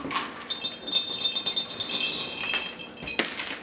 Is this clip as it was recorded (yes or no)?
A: yes